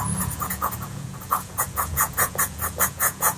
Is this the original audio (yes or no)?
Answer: no